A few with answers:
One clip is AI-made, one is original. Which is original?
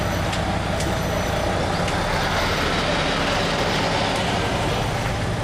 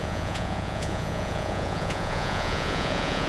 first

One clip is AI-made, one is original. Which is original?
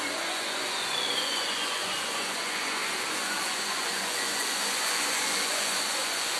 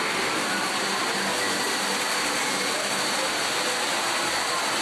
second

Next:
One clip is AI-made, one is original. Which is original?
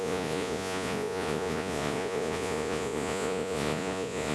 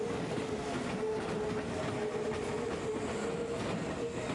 second